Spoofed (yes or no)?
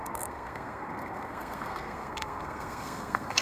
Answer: yes